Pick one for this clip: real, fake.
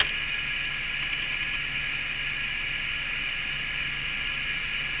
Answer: real